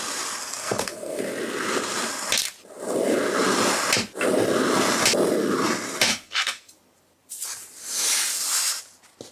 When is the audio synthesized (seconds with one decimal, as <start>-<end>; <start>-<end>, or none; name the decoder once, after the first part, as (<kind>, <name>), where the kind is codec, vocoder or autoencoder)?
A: 0.4-1.2 (codec, SNAC); 6.1-6.7